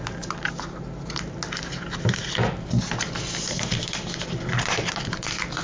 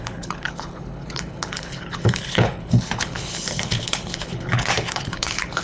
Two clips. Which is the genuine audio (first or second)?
first